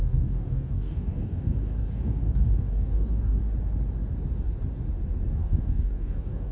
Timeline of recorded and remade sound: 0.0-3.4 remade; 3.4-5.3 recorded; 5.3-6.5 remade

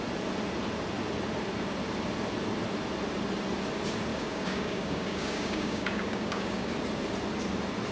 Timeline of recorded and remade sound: 0.0-4.1 recorded; 4.1-6.7 remade; 6.7-7.9 recorded

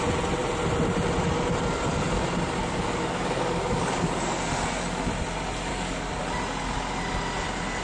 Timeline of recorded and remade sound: 0.0-2.6 recorded; 2.6-4.4 remade; 4.4-5.7 recorded; 5.7-6.2 remade; 6.2-7.8 recorded

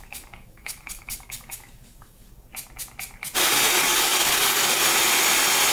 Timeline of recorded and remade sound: 0.0-2.5 remade; 2.5-3.8 recorded; 3.8-4.8 remade; 4.8-5.7 recorded